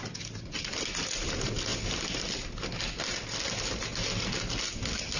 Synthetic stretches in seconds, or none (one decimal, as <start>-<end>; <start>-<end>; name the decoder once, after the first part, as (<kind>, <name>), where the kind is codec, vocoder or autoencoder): none